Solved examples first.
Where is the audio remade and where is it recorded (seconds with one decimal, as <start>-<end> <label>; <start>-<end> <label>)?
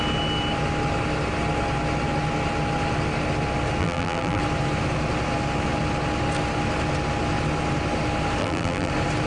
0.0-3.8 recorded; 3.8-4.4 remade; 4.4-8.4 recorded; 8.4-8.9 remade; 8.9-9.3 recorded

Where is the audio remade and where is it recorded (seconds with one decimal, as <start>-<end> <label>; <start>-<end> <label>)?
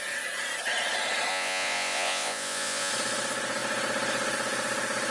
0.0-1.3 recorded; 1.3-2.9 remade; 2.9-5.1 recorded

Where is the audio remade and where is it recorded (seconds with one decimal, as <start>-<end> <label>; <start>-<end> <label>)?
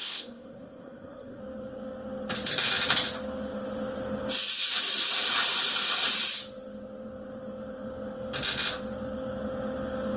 0.0-1.4 remade; 1.4-10.2 recorded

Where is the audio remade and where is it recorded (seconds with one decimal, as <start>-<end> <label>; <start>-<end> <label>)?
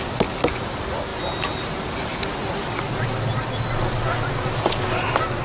0.0-5.4 recorded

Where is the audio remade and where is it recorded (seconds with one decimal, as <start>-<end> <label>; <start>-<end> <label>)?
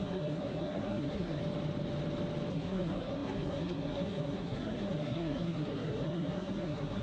0.0-1.4 remade; 1.4-2.5 recorded; 2.5-7.0 remade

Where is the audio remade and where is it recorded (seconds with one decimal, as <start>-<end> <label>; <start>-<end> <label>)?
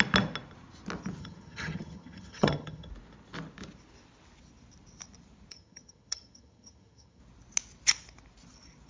0.0-1.2 recorded; 1.2-2.9 remade; 2.9-5.5 recorded; 5.5-7.2 remade; 7.2-8.9 recorded